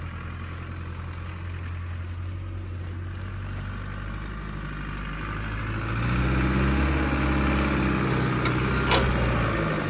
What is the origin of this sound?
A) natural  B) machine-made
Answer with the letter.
A